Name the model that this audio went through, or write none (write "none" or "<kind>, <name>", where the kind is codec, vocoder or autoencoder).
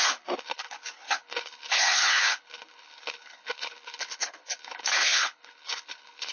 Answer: codec, HILCodec